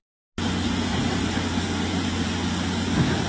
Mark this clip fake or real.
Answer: real